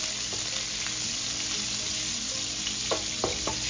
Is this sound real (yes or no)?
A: yes